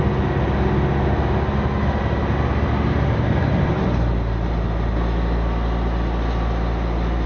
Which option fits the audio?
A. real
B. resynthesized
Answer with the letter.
A